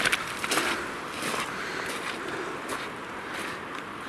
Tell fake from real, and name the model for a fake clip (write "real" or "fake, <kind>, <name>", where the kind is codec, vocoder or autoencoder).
real